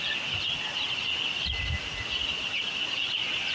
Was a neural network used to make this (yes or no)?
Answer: no